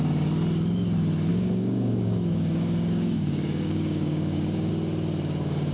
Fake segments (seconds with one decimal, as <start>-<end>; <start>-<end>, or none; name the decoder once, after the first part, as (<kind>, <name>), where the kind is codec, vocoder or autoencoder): 1.3-4.7 (codec, DAC)